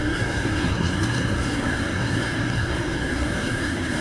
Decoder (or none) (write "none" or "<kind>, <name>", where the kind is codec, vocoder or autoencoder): codec, SNAC